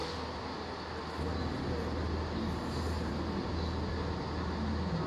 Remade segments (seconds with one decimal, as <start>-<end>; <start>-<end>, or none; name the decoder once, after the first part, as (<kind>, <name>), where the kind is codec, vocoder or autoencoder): none